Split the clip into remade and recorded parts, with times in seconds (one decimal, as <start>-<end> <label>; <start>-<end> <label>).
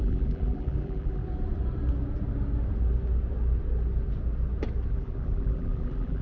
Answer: 0.0-1.2 remade; 1.2-4.9 recorded; 4.9-6.2 remade